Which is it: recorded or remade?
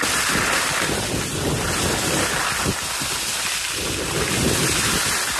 recorded